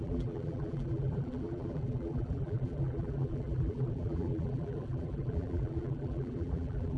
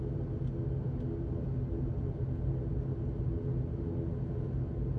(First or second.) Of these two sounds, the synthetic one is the first